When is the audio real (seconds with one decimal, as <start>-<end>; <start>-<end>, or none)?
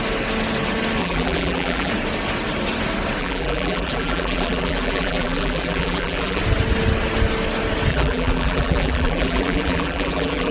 0.0-1.0; 1.9-3.2; 6.4-7.9